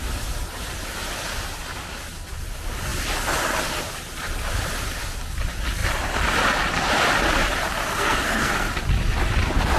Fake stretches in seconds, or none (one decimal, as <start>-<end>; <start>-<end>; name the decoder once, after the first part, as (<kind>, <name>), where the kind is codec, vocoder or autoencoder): 7.9-8.7 (codec, SNAC)